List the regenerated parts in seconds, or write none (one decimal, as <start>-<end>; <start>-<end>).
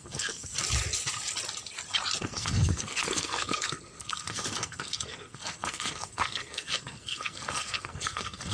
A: 0.0-0.5; 2.2-8.5